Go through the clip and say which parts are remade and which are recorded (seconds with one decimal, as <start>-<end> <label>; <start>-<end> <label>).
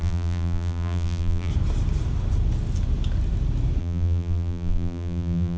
0.0-1.5 remade; 1.5-3.8 recorded; 3.8-5.6 remade